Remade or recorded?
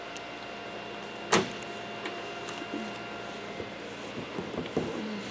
recorded